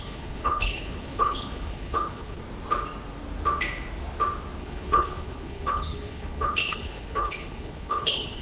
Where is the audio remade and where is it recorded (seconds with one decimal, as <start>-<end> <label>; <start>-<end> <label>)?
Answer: 0.0-2.4 remade; 2.4-4.6 recorded; 4.6-8.4 remade